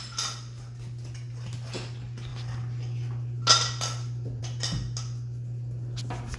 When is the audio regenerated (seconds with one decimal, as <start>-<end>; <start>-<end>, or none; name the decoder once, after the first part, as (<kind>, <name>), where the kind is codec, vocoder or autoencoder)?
none